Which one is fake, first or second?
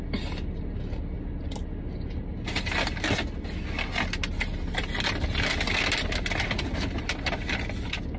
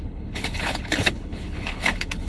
second